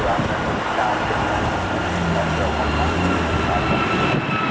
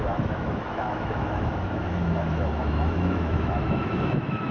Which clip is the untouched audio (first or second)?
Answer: first